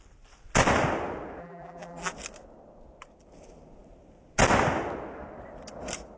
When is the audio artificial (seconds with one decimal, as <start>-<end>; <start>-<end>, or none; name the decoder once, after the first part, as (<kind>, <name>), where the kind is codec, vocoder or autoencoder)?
1.4-2.1 (vocoder, BigVGAN v2)